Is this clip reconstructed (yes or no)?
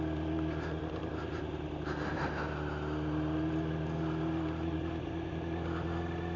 no